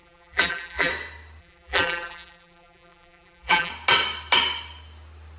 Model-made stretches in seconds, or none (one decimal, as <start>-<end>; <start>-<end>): 0.0-0.9; 1.4-3.7